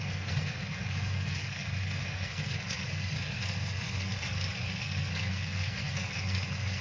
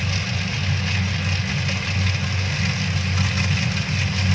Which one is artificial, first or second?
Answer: first